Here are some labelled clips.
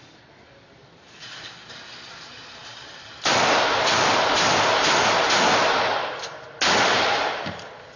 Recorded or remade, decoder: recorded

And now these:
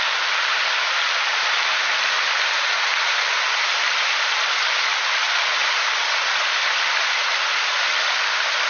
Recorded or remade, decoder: recorded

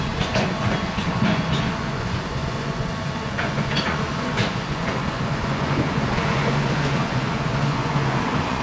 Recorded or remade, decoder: remade, vocoder, Vocos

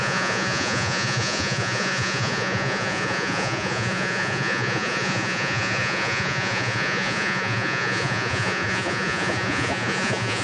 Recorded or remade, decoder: remade, vocoder, Vocos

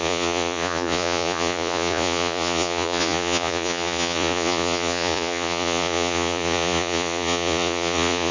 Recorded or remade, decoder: remade, vocoder, Vocos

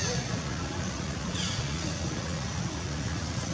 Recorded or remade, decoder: remade, vocoder, Vocos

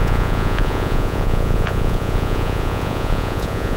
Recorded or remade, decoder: remade, vocoder, Vocos